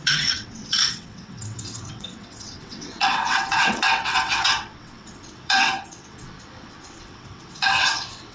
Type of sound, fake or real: fake